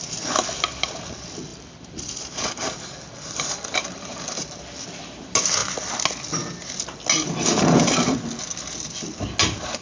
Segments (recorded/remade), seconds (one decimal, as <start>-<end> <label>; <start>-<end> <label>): 0.0-1.5 recorded; 1.5-4.4 remade; 4.4-9.8 recorded